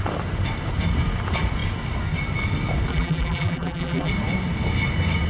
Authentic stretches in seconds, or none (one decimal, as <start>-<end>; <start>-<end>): 0.0-2.9; 4.1-5.3